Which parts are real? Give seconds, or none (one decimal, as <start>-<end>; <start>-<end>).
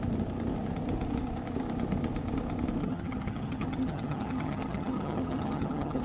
0.0-2.8